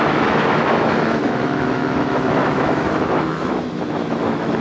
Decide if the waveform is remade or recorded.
remade